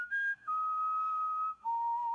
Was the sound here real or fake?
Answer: fake